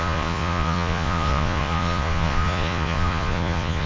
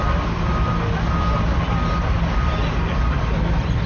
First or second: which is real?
second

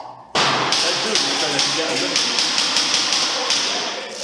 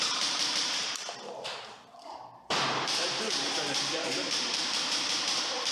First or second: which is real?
first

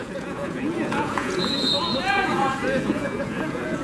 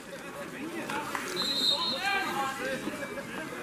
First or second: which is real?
second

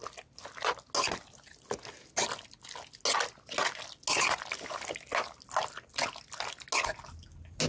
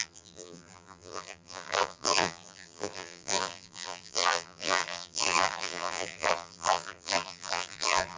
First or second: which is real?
first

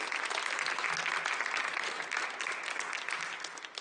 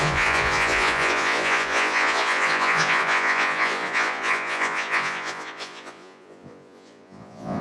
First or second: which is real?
first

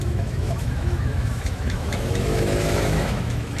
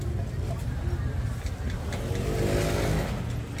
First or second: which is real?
second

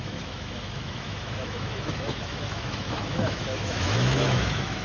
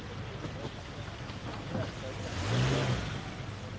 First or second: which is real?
second